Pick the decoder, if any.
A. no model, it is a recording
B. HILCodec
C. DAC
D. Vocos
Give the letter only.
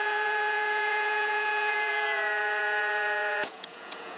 D